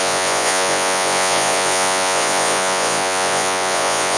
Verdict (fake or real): fake